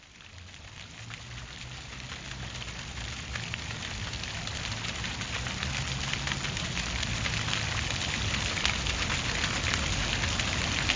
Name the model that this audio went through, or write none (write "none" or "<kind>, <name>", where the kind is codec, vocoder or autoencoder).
none